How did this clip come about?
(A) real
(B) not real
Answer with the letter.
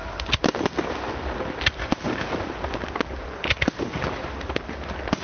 A